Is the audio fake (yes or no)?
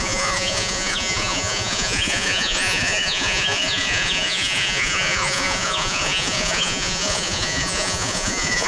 yes